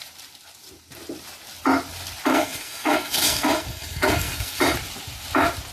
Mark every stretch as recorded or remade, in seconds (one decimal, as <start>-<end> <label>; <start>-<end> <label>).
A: 0.0-2.3 recorded; 2.3-4.6 remade; 4.6-5.7 recorded